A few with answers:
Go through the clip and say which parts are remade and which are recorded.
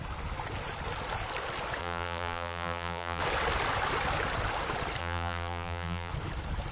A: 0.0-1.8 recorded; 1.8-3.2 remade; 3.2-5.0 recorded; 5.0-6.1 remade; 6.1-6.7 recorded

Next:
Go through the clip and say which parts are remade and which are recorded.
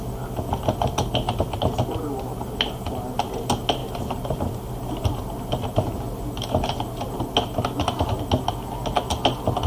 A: 0.0-3.8 recorded; 3.8-4.9 remade; 4.9-9.7 recorded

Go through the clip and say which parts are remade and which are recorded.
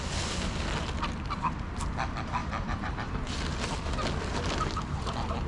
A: 0.0-2.4 recorded; 2.4-3.3 remade; 3.3-5.5 recorded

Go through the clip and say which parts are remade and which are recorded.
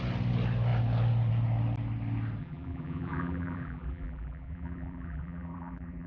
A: 0.0-2.4 recorded; 2.4-6.1 remade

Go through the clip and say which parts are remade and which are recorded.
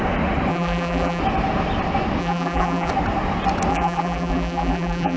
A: 0.0-0.5 recorded; 0.5-1.2 remade; 1.2-2.2 recorded; 2.2-2.9 remade; 2.9-3.7 recorded; 3.7-5.2 remade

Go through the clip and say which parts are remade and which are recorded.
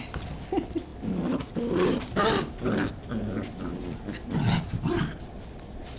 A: 0.0-2.2 remade; 2.2-4.5 recorded; 4.5-6.0 remade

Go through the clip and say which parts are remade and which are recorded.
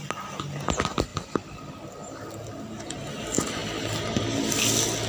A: 0.0-5.1 recorded